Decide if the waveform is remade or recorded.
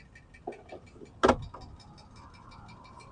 recorded